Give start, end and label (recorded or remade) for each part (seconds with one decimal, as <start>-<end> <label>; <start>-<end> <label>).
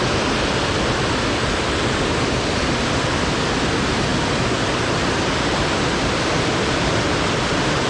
0.0-7.9 recorded